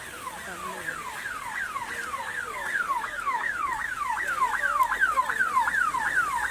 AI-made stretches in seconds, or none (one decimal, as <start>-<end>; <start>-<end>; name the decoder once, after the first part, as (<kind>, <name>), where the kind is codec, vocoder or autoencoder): 0.6-1.6 (codec, DAC); 2.3-4.4